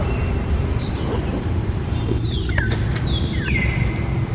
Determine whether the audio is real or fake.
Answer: real